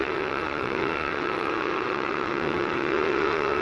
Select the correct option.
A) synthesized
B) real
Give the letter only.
A